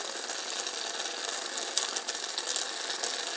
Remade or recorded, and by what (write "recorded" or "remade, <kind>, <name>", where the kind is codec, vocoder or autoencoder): recorded